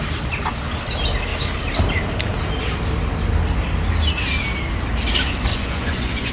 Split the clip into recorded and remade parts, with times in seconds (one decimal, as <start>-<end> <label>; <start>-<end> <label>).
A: 0.0-5.5 recorded; 5.5-6.3 remade